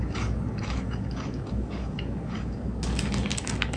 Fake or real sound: fake